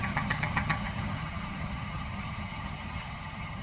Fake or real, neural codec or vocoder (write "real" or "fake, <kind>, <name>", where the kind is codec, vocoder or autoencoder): fake, vocoder, HiFi-GAN